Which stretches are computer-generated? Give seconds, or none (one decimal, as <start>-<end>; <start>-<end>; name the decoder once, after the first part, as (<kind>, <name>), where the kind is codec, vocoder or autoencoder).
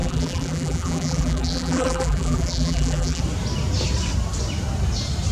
0.0-3.2 (vocoder, BigVGAN v2)